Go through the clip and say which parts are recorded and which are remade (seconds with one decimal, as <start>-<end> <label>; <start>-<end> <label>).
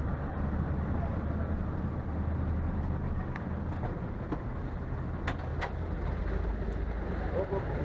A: 0.0-7.8 recorded